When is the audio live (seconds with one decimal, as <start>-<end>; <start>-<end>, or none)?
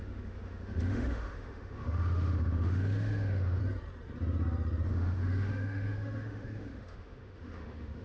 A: 3.6-4.9